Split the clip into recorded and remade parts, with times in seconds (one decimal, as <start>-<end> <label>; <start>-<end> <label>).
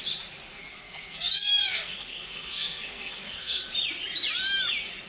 0.0-0.5 recorded; 0.5-3.6 remade; 3.6-5.1 recorded